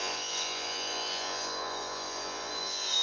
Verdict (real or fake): fake